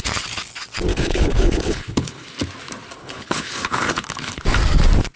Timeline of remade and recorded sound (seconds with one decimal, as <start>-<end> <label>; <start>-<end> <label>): 0.0-0.9 recorded; 0.9-2.3 remade; 2.3-3.0 recorded; 3.0-4.4 remade; 4.4-5.2 recorded